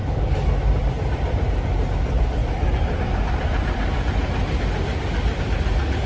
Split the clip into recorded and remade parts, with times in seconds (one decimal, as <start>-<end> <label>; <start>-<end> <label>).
0.0-6.1 recorded